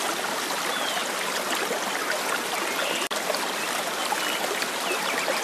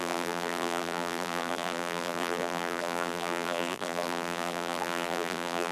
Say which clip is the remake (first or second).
second